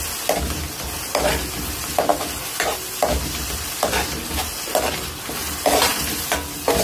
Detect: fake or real real